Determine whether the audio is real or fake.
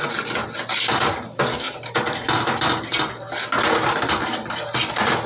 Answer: real